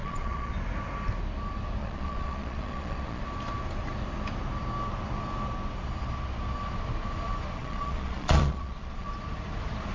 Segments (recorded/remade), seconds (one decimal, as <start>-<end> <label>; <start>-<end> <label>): 0.0-0.5 remade; 0.5-1.8 recorded; 1.8-3.2 remade; 3.2-7.6 recorded; 7.6-9.1 remade; 9.1-9.9 recorded